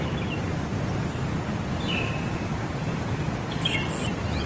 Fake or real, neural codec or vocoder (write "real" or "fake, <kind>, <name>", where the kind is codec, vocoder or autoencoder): real